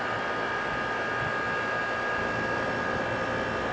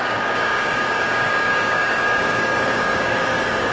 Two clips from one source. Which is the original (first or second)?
first